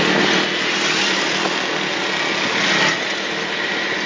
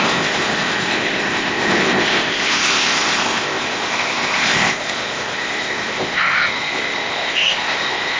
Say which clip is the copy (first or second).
second